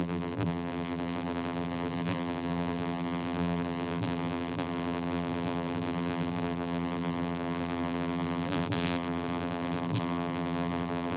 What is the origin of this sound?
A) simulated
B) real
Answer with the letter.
A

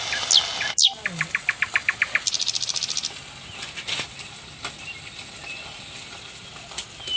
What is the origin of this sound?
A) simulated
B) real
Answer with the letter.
B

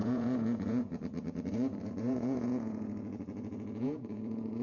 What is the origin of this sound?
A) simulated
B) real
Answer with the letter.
A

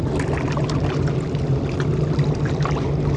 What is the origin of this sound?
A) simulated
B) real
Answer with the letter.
B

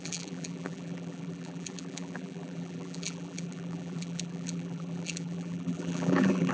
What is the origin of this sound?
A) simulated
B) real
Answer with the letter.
A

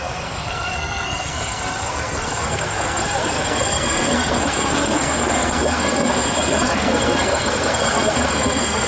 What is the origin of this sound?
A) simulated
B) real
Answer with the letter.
A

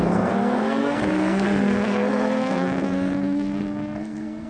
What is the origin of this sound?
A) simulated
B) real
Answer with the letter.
A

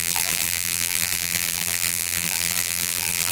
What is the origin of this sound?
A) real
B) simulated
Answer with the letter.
B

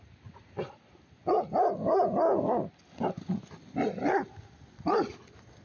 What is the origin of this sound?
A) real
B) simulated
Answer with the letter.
A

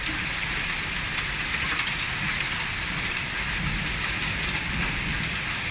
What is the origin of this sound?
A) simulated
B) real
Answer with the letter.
B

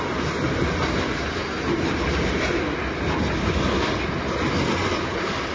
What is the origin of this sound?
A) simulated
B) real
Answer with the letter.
B